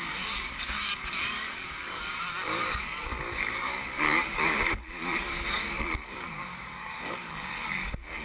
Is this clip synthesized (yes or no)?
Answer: yes